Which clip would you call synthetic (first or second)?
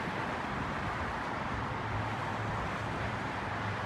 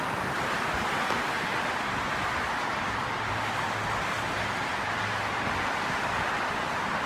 first